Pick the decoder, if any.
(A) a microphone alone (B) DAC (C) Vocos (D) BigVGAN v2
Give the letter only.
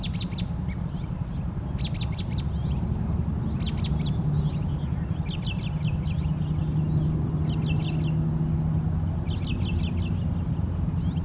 A